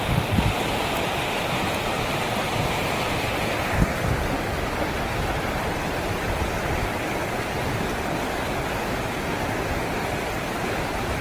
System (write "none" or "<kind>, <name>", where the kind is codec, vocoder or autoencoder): none